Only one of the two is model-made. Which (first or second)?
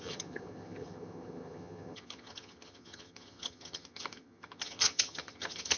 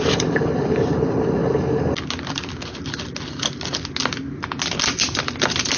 first